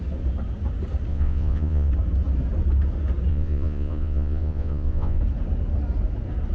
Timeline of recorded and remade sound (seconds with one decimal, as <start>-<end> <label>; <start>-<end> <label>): 0.0-1.1 recorded; 1.1-1.9 remade; 1.9-3.3 recorded; 3.3-5.2 remade; 5.2-6.5 recorded